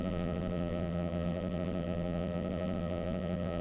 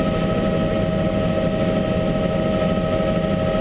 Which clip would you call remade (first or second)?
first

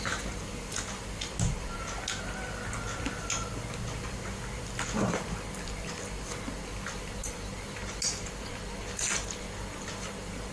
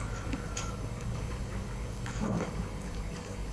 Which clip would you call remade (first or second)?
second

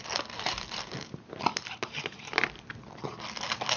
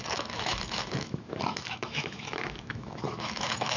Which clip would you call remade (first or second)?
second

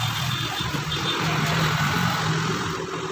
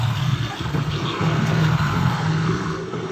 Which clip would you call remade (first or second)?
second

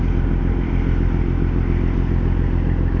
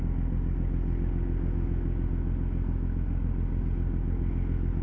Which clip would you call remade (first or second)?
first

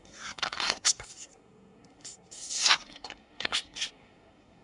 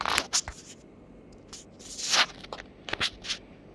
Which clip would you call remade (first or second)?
first